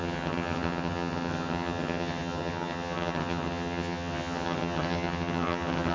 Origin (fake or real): fake